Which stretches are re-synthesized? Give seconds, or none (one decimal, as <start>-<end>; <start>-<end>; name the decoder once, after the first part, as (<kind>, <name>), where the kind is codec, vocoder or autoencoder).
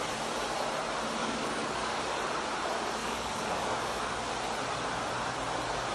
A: 1.2-2.0 (codec, DAC); 3.0-4.3